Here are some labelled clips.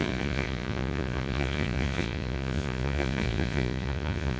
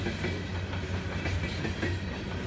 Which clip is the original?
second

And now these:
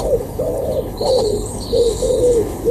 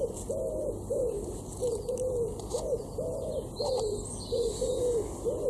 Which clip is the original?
second